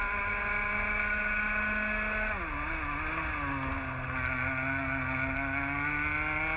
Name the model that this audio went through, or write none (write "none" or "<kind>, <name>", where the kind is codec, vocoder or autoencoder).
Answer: none